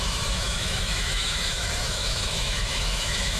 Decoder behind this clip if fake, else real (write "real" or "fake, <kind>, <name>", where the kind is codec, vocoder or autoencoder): fake, autoencoder, DAC-VAE